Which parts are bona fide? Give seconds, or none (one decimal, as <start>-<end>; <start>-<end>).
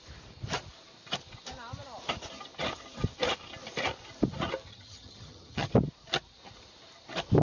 0.0-4.7; 5.7-7.4